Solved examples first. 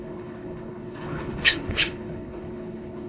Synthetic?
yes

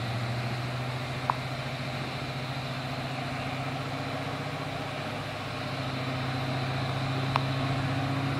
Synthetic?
no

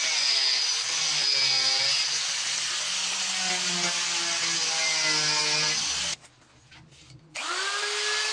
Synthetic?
no